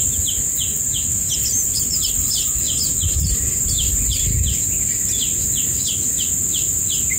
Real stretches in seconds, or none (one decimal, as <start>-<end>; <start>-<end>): 0.0-0.7; 2.1-7.2